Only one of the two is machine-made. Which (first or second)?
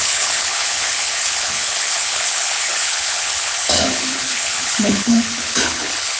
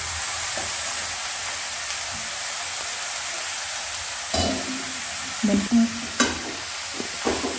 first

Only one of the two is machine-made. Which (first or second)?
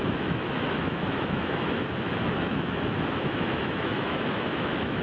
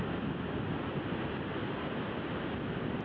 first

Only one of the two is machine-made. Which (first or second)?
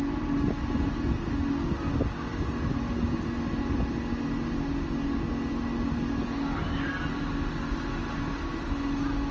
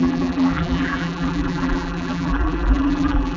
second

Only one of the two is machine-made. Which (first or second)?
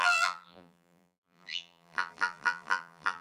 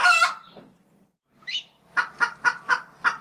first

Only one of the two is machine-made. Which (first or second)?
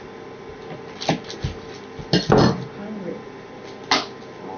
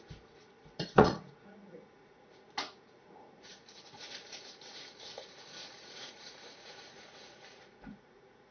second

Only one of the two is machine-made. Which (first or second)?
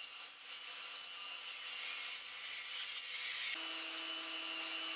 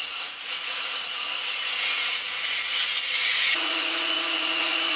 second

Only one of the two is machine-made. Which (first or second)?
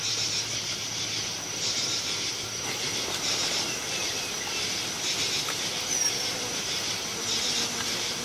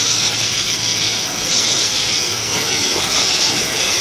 second